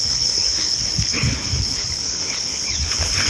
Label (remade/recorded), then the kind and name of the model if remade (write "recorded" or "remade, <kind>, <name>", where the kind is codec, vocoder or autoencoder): remade, codec, HILCodec